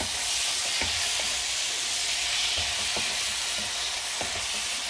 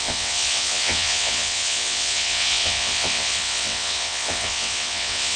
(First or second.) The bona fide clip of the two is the first